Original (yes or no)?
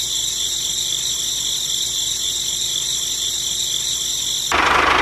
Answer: yes